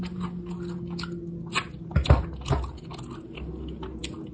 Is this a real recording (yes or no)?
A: yes